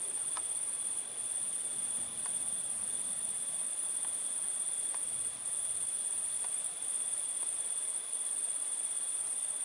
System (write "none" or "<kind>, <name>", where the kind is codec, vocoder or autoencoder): none